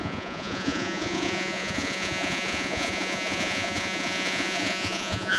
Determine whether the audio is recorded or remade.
remade